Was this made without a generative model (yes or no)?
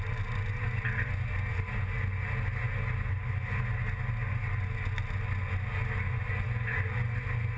yes